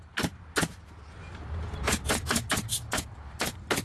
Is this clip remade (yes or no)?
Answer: no